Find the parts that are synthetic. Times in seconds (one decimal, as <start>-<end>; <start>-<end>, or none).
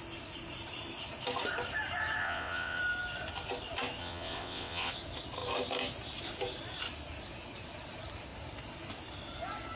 2.2-2.8; 4.0-4.9